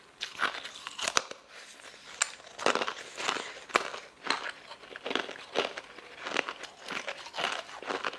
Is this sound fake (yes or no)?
no